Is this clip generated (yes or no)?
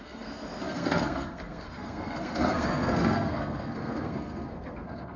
yes